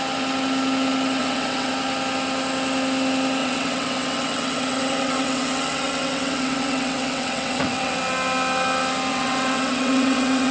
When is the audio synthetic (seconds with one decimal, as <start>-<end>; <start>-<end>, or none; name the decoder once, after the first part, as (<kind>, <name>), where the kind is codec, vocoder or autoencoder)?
1.2-1.7 (vocoder, WaveNeXt); 3.4-8.0; 9.1-10.5